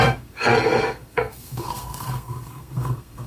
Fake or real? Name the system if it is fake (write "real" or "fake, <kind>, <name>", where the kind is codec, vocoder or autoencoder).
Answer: fake, codec, SNAC